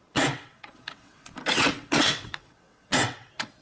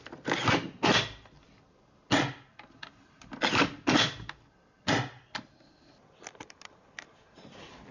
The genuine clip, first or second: second